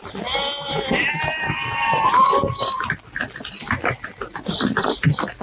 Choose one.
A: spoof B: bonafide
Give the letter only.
B